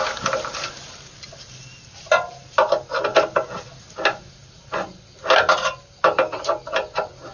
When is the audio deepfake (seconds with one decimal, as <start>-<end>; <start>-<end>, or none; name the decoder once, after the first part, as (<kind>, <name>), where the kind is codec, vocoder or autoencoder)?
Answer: none

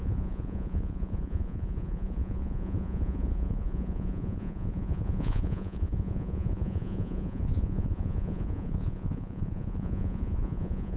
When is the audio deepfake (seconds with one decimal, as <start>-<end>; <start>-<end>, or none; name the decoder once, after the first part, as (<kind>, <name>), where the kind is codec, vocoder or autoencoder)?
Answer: 0.0-11.0 (vocoder, Vocos)

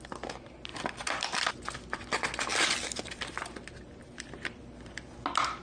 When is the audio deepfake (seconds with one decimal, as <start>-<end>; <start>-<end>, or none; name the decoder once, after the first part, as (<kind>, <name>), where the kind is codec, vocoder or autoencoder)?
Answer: 0.7-1.4 (vocoder, BigVGAN v2); 2.5-4.7

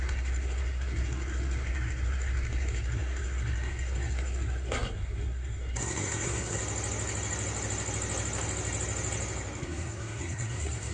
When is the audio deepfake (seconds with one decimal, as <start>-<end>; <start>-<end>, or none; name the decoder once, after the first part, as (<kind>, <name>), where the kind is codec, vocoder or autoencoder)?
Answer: 0.0-6.6 (codec, SNAC); 9.6-10.9

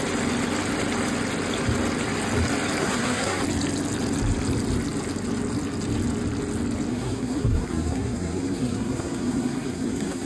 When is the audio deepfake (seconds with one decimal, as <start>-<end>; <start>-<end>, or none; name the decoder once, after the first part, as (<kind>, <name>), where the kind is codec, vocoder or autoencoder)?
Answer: 2.8-3.4 (codec, SNAC); 6.9-10.3